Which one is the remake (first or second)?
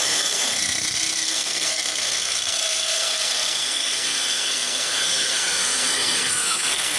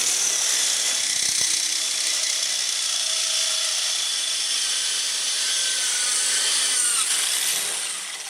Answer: first